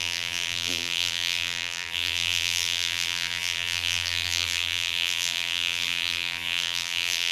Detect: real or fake fake